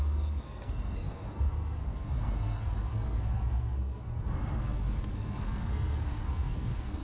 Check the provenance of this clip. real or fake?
fake